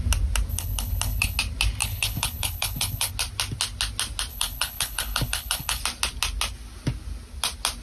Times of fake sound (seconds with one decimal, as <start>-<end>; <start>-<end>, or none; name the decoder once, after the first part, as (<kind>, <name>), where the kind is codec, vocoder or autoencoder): 0.5-1.4 (codec, HILCodec); 1.8-3.1; 4.3-5.8